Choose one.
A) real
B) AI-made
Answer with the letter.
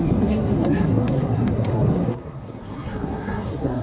B